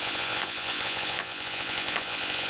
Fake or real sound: fake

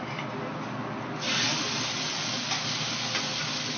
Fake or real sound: real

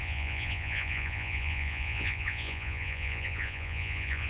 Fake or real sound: fake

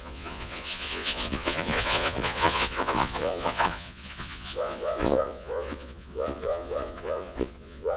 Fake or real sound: fake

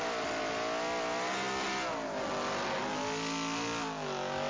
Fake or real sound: real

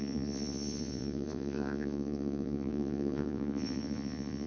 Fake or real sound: fake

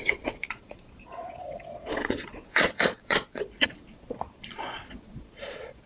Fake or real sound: fake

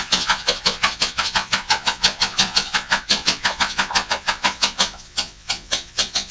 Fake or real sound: fake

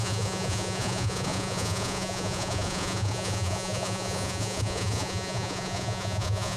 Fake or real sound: fake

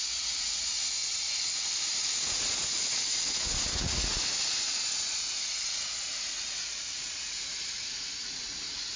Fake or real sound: fake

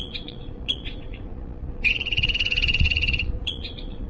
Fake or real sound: fake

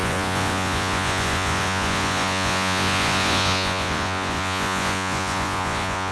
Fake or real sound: fake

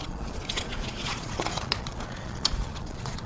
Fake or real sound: fake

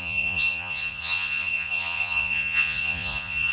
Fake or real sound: fake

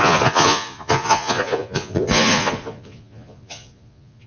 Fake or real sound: fake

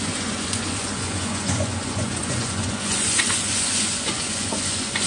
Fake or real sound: fake